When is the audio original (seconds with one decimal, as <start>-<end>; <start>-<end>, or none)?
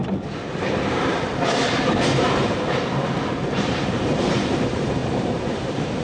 none